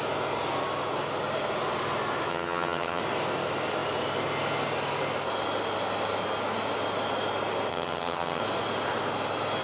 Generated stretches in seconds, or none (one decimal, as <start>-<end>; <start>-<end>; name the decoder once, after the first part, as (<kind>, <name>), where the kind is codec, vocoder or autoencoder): 2.3-3.0 (vocoder, HiFi-GAN); 7.7-8.4